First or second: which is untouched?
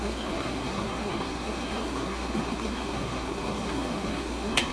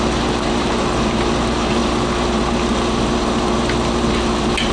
second